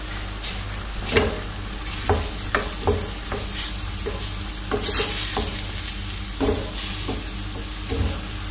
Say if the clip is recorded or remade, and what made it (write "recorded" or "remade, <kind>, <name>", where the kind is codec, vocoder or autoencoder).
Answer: recorded